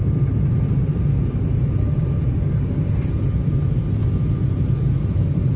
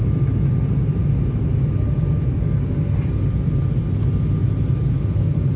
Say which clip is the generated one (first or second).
first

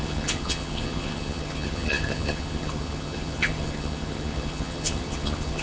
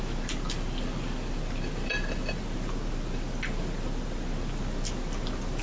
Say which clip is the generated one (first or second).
first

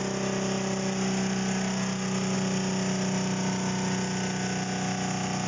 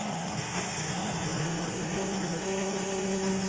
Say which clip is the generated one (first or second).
second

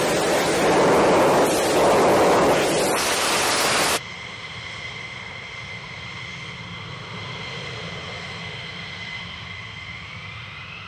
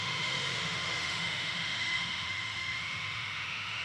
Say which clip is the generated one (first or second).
second